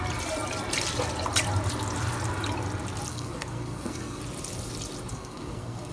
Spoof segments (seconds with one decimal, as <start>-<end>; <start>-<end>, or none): 3.1-4.2; 5.1-5.9